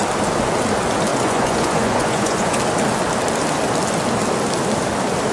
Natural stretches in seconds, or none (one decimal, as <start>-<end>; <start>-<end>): 0.0-1.1; 2.6-5.3